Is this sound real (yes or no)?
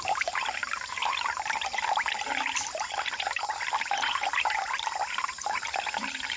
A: no